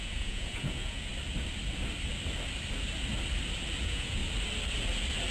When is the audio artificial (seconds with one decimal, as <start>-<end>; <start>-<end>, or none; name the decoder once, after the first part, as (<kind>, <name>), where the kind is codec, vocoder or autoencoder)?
0.0-1.1 (vocoder, Vocos); 3.8-4.2